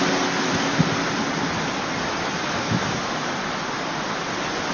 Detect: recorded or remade recorded